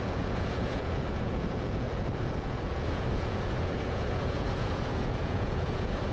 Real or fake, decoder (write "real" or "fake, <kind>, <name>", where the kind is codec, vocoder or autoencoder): fake, vocoder, Vocos